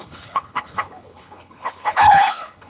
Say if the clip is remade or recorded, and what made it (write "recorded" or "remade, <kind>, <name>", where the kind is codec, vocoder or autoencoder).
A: remade, codec, HILCodec